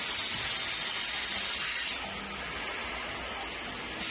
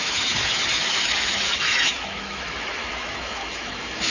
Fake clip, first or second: second